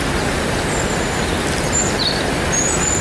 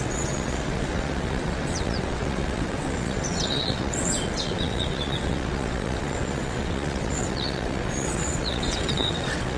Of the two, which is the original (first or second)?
first